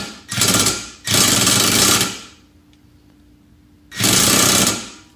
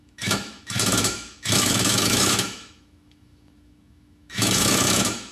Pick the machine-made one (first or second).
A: second